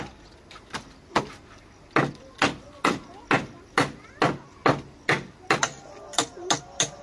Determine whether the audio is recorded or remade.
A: recorded